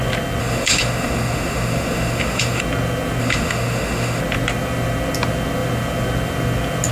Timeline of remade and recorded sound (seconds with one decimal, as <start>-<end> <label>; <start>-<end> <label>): 0.0-0.4 recorded; 0.4-2.6 remade; 2.6-3.2 recorded; 3.2-4.2 remade; 4.2-6.9 recorded